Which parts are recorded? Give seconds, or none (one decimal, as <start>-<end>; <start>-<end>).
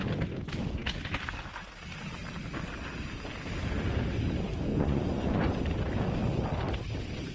0.0-4.7; 5.6-7.3